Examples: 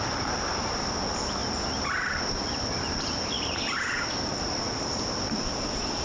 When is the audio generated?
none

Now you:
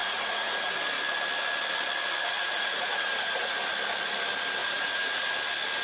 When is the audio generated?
0.0-0.7; 2.3-3.6; 4.6-5.3

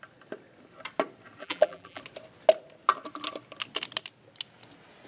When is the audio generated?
1.4-2.0

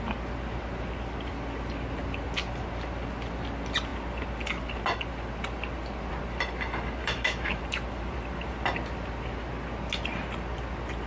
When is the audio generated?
7.0-7.6

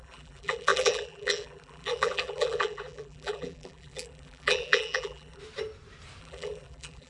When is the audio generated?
0.0-5.4; 6.2-7.1

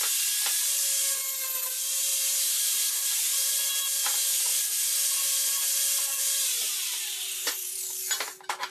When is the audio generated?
2.1-3.5; 4.5-5.1; 6.1-7.8

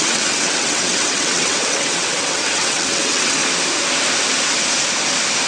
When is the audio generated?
0.0-3.4